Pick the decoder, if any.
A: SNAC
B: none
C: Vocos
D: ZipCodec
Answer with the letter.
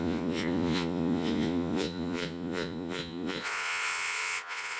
C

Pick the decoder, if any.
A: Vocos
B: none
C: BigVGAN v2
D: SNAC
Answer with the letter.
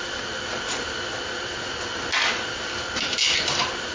B